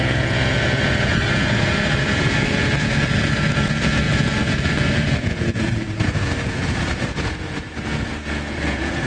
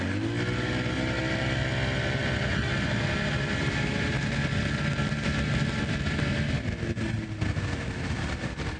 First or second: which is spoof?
first